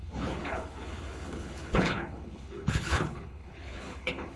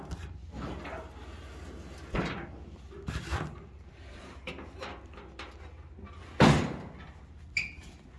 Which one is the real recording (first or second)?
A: second